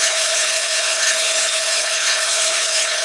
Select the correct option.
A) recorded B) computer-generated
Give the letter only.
B